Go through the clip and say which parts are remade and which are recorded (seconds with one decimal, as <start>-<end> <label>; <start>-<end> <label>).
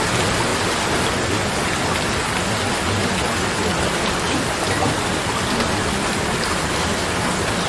0.0-7.7 recorded